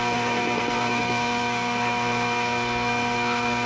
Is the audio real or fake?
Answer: fake